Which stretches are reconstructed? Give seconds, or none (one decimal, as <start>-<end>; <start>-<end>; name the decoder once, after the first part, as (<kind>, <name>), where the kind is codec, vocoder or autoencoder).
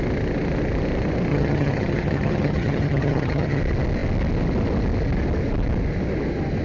1.3-3.6 (vocoder, HiFi-GAN)